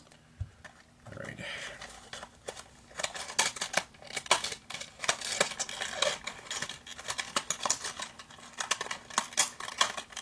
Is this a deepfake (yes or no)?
no